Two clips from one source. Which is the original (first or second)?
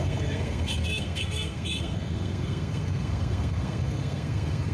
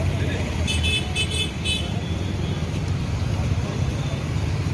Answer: second